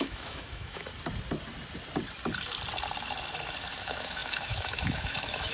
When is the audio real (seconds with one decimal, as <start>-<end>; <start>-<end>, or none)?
0.9-3.8

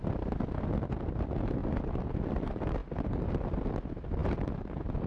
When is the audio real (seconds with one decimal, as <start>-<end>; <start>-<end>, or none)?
0.0-5.1

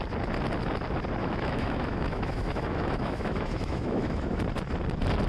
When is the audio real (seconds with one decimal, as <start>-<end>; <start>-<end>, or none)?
0.0-1.2; 4.4-5.3

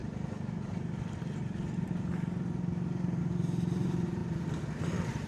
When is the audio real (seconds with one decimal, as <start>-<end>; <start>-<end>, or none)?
0.0-5.3

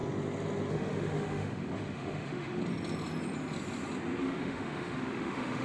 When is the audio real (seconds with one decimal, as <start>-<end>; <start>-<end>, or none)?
0.0-0.7; 2.6-4.2

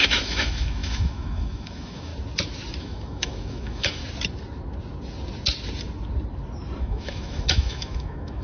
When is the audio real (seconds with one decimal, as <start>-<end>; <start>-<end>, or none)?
2.1-2.8; 4.0-6.8